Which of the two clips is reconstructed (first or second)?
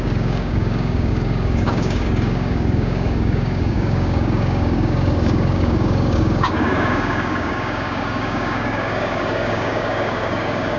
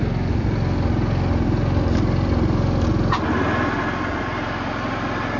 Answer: first